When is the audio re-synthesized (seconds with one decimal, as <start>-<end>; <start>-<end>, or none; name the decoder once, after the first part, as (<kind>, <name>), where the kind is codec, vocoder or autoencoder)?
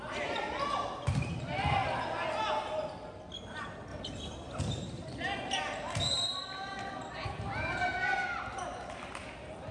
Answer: none